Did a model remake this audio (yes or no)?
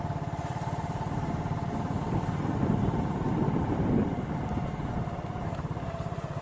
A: no